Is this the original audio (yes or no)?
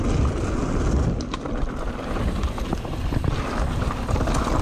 yes